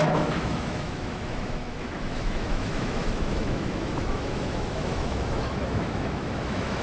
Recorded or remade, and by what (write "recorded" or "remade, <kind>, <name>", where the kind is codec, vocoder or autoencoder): remade, autoencoder, DAC-VAE